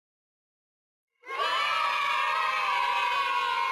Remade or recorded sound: recorded